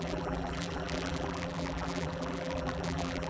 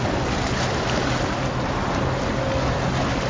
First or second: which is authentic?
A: second